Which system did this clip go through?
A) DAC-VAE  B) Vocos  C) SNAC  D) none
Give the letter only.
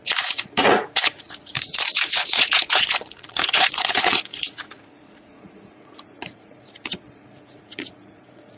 B